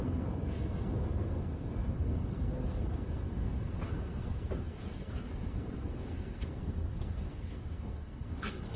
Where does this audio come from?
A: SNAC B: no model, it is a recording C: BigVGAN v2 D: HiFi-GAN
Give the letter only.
A